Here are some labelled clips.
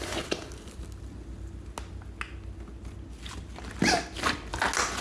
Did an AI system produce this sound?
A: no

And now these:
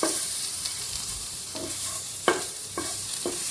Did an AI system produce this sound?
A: yes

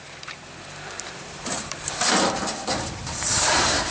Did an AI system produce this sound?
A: yes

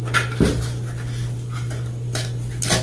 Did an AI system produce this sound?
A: no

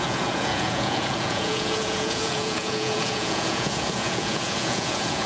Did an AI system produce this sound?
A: yes